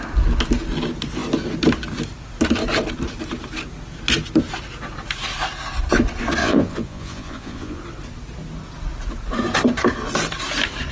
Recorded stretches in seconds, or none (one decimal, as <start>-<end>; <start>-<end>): 0.0-6.4; 7.8-10.9